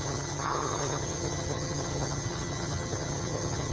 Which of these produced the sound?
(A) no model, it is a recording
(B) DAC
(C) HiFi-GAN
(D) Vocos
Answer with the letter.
C